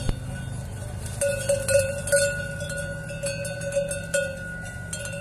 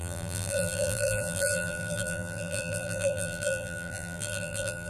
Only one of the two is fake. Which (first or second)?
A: second